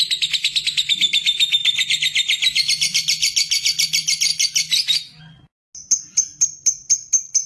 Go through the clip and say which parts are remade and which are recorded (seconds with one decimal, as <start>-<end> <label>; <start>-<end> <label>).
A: 0.0-7.5 recorded